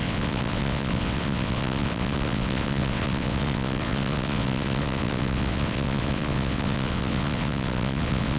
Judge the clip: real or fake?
fake